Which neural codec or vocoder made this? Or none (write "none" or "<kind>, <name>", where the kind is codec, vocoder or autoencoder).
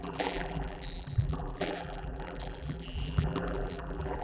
vocoder, BigVGAN v2